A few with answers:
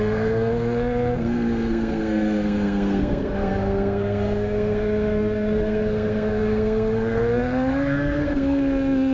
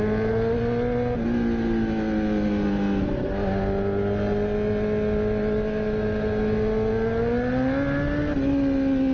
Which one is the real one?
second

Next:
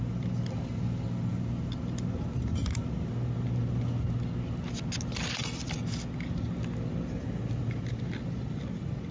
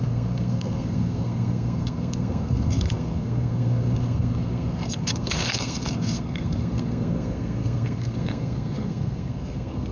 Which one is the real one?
first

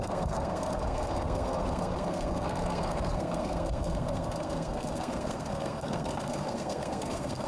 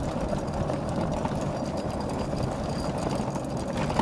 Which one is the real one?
second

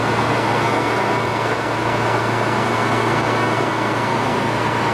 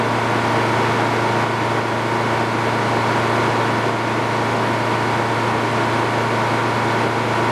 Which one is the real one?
second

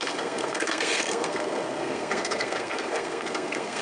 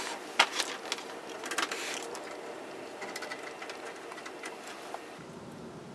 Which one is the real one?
second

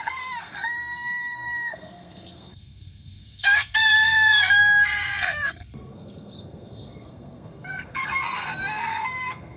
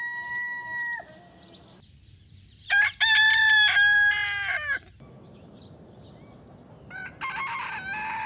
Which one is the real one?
second